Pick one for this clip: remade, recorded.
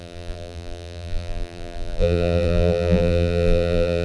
remade